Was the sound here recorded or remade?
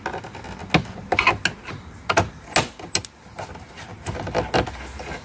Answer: recorded